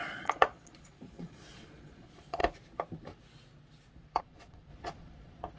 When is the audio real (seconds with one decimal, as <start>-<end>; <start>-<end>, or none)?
2.4-4.2